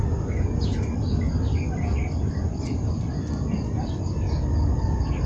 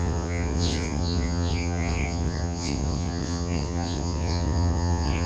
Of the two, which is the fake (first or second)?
second